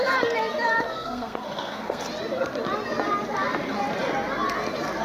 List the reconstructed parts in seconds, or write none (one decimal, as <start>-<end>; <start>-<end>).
0.9-2.0